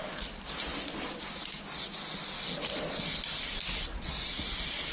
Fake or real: real